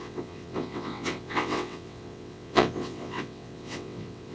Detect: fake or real fake